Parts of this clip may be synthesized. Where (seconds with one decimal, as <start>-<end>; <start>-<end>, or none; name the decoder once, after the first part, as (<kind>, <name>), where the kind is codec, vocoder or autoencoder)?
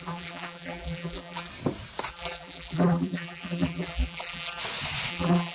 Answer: 0.0-1.5 (vocoder, BigVGAN v2); 2.1-4.6; 5.1-5.5